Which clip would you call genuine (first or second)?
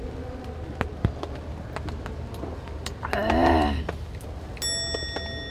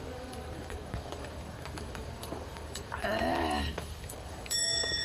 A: first